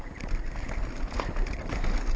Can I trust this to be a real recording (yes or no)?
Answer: yes